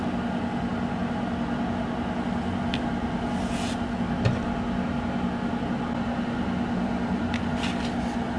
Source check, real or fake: real